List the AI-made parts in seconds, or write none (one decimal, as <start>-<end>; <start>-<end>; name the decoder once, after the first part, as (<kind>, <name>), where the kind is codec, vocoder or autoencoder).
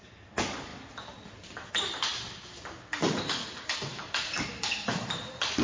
none